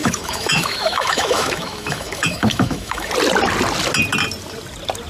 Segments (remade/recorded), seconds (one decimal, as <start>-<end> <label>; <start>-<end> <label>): 0.0-3.1 remade; 3.1-5.1 recorded